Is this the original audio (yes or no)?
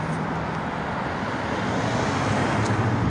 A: yes